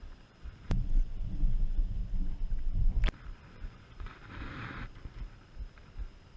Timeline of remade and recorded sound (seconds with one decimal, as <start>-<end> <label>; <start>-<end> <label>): 0.0-2.0 remade; 2.0-3.5 recorded; 3.5-4.1 remade; 4.1-6.4 recorded